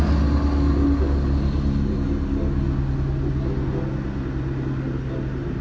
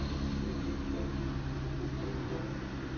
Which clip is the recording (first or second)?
first